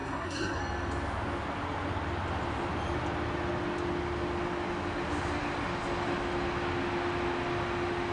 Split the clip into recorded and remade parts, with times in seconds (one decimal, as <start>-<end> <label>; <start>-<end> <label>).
0.0-0.6 remade; 0.6-8.1 recorded